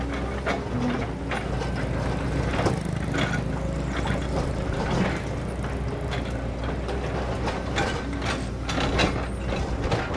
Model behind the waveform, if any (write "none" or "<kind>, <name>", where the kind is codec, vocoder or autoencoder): none